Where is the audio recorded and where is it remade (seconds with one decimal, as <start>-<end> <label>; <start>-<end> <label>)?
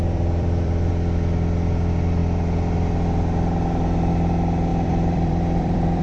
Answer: 0.0-0.9 remade; 0.9-4.7 recorded; 4.7-6.0 remade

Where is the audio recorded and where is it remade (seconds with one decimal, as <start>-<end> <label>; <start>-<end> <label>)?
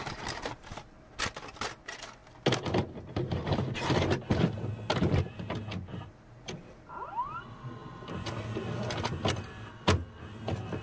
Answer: 0.0-10.8 recorded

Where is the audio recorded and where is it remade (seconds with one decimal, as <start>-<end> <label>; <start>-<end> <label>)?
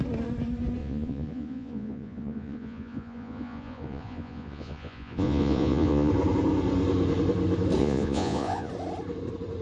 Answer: 0.0-0.8 recorded; 0.8-6.1 remade; 6.1-7.8 recorded; 7.8-8.7 remade; 8.7-9.6 recorded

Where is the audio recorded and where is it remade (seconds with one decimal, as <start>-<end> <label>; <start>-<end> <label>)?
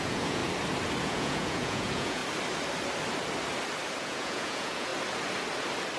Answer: 0.0-0.4 remade; 0.4-1.0 recorded; 1.0-2.2 remade; 2.2-4.0 recorded; 4.0-4.9 remade; 4.9-6.0 recorded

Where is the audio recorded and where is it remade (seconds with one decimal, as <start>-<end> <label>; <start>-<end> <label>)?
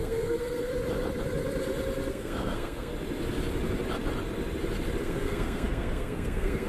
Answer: 0.0-0.7 remade; 0.7-2.1 recorded; 2.1-2.9 remade; 2.9-5.0 recorded; 5.0-6.7 remade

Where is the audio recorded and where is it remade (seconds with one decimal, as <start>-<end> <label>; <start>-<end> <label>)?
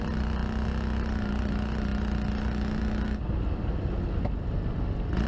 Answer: 0.0-5.3 recorded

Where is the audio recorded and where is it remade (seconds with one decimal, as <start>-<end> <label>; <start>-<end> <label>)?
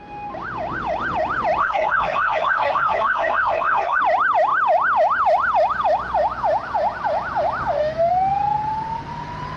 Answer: 0.0-1.6 recorded; 1.6-4.0 remade; 4.0-9.6 recorded